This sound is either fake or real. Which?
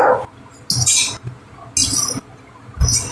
real